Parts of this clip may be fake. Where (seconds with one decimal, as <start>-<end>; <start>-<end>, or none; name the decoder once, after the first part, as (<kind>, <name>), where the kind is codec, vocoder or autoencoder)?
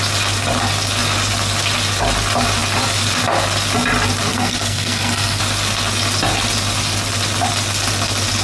4.3-5.4 (codec, SNAC)